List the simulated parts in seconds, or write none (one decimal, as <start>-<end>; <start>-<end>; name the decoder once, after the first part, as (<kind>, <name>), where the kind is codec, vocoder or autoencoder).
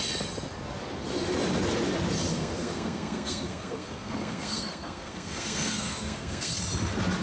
2.3-6.6 (codec, SNAC)